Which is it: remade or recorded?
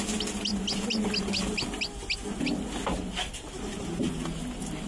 recorded